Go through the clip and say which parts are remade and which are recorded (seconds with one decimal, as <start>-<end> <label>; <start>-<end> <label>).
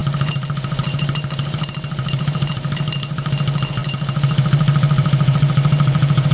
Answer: 0.0-3.3 remade; 3.3-3.8 recorded; 3.8-6.3 remade